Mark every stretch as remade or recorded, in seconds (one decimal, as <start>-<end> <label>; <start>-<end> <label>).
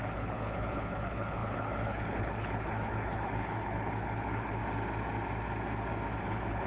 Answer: 0.0-4.6 remade; 4.6-6.2 recorded; 6.2-6.7 remade